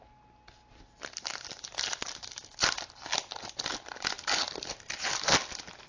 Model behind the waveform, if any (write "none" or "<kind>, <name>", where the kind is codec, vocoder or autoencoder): none